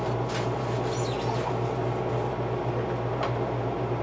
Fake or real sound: real